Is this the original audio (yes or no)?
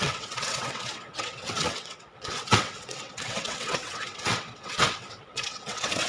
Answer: no